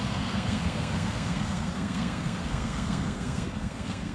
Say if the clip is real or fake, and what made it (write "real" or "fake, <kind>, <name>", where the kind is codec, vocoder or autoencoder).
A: fake, codec, SNAC